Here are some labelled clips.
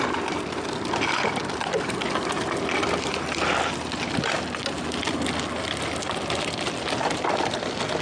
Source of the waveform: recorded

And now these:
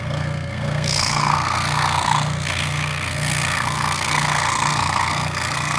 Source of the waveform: remade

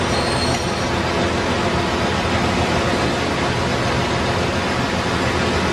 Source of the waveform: recorded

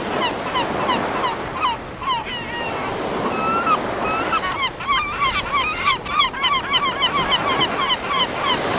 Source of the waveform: recorded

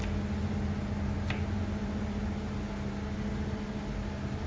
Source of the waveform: recorded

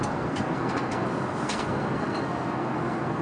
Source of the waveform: remade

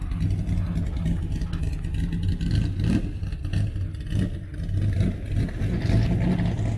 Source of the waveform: recorded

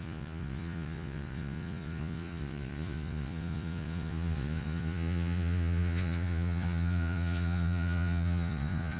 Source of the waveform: remade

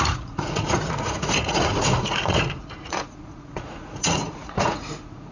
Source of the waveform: remade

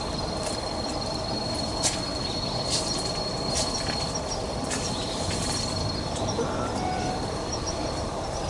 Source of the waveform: remade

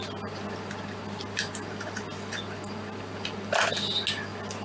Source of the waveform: recorded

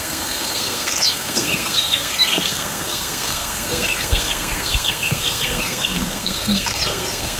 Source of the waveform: remade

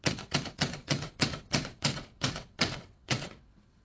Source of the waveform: remade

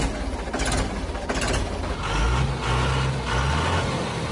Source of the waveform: recorded